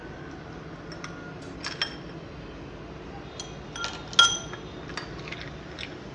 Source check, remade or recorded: recorded